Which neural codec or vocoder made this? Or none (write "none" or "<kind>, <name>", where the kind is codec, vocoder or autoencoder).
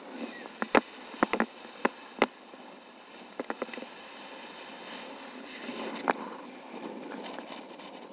none